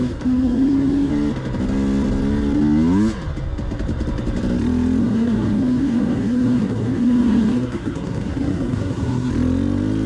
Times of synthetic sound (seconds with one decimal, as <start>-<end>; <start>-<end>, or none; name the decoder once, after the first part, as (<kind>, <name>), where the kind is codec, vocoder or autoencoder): 0.0-1.1 (codec, SNAC); 5.0-9.3